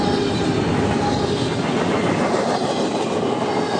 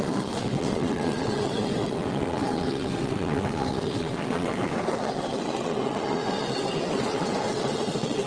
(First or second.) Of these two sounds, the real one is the first